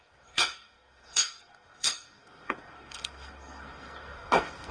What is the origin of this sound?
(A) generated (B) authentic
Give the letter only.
A